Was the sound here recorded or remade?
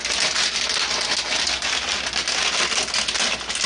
recorded